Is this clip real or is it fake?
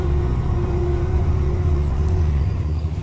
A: fake